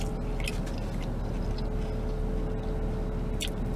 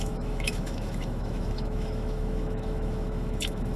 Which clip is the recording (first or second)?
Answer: first